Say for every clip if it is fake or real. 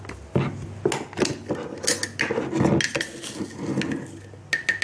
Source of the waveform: real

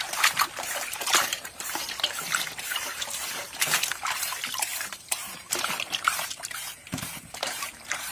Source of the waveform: fake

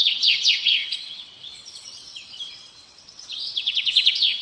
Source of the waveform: fake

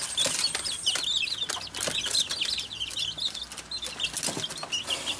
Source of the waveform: real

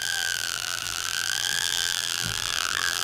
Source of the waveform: fake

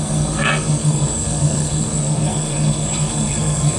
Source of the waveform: fake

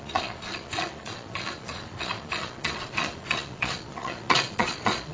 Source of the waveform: fake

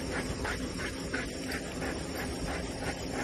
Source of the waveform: real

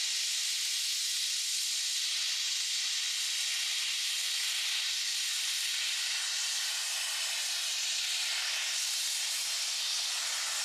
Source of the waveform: real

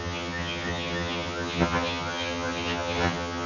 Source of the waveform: fake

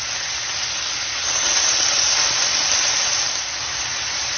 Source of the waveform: real